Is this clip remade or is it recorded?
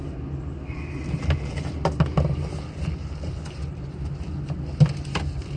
recorded